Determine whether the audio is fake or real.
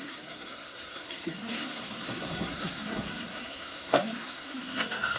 fake